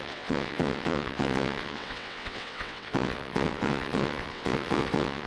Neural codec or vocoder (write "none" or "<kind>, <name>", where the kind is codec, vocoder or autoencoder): vocoder, WaveNeXt